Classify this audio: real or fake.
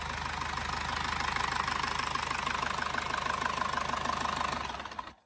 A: real